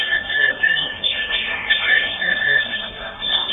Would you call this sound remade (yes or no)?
yes